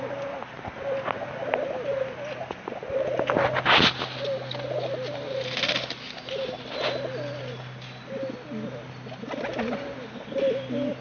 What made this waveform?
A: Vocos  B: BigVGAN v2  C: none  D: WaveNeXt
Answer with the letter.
C